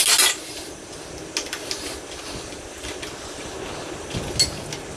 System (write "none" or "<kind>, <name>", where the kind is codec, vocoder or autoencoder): none